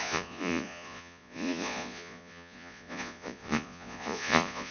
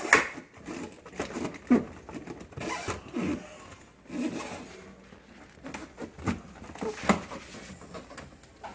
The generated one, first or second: first